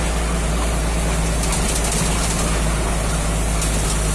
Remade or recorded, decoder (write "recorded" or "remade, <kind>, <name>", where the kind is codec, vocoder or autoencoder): recorded